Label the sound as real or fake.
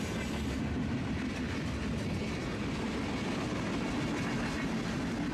real